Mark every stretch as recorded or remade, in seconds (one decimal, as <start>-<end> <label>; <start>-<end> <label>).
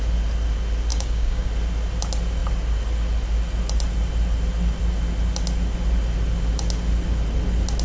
0.0-0.9 recorded; 0.9-1.5 remade; 1.5-7.8 recorded